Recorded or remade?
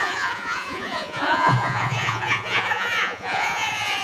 remade